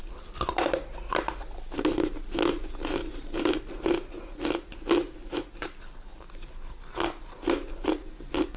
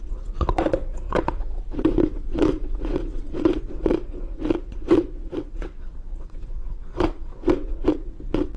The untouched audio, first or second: first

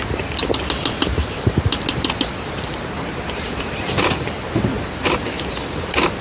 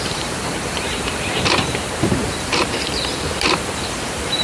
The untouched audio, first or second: first